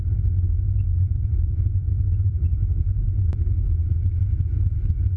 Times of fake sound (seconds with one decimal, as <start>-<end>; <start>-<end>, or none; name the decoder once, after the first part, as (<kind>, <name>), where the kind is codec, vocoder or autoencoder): 0.9-2.7 (vocoder, BigVGAN v2)